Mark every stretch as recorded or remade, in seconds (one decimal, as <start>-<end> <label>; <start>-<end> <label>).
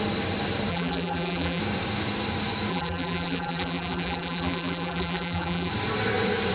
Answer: 0.0-0.7 recorded; 0.7-1.6 remade; 1.6-2.7 recorded; 2.7-5.7 remade; 5.7-6.5 recorded